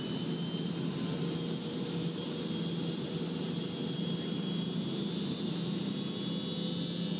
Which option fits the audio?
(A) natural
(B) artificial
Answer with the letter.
A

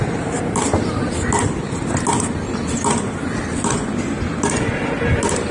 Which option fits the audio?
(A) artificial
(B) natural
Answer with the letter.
B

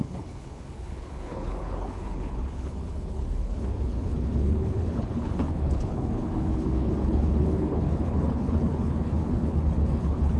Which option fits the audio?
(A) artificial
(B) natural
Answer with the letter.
A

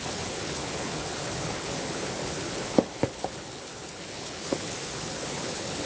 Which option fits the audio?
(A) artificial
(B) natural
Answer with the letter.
A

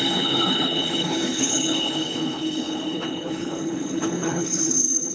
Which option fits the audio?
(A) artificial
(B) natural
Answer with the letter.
A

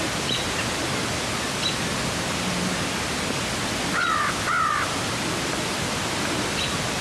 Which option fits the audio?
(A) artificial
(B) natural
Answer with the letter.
B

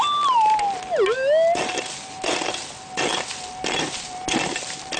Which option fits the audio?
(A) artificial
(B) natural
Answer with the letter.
B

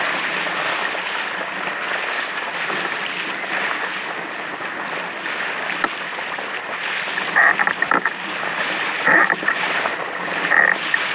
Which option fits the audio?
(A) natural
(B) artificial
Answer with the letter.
A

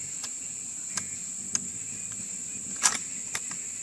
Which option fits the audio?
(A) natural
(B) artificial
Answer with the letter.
A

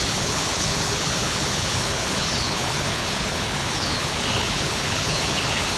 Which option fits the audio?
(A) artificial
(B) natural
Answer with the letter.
A